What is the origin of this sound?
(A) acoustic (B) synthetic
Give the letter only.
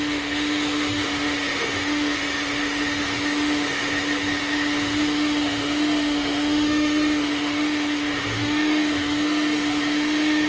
B